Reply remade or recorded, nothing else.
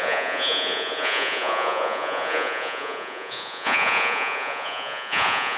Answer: remade